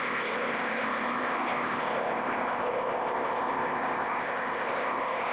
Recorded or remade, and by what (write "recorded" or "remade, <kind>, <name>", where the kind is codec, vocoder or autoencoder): remade, codec, ZipCodec